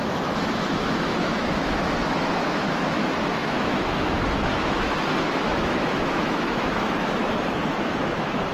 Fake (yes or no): yes